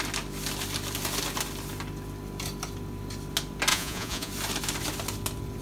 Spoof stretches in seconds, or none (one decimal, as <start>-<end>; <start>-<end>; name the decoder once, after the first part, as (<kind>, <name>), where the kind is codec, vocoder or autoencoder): 3.7-4.3 (vocoder, Vocos)